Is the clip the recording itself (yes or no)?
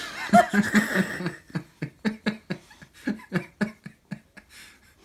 yes